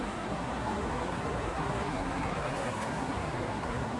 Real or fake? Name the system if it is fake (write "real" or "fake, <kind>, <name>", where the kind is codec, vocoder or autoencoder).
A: fake, codec, SNAC